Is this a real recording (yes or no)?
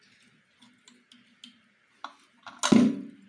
yes